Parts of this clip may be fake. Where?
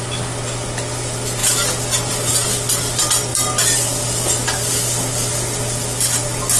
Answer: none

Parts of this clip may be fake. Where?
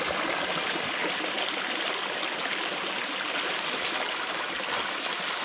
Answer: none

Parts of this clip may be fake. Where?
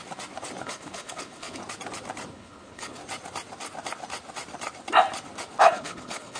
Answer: 0.6-1.6 (codec, HILCodec); 2.3-3.0; 5.6-6.4